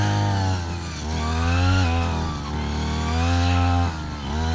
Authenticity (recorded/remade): recorded